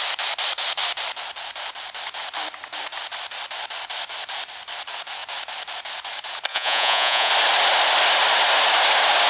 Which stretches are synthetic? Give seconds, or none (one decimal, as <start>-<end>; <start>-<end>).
6.5-7.3